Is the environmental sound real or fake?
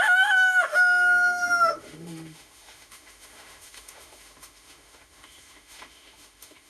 fake